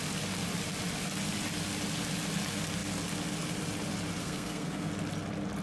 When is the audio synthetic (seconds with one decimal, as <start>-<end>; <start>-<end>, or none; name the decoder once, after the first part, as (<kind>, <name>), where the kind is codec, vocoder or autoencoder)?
4.2-4.9 (codec, SNAC)